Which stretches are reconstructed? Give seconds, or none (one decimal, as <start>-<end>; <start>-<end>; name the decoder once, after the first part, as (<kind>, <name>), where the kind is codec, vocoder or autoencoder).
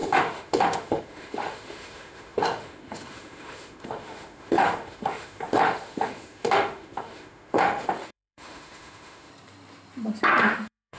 0.0-9.3 (autoencoder, DAC-VAE); 10.4-11.0